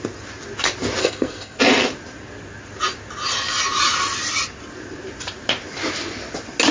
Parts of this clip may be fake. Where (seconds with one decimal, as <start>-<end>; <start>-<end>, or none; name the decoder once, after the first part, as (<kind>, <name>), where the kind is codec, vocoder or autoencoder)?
1.0-1.6 (codec, SNAC)